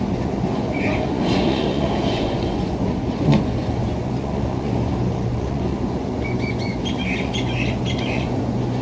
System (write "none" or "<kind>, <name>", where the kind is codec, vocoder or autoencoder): vocoder, Vocos